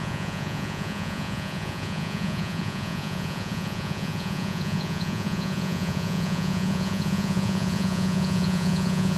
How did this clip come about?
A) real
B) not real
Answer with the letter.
B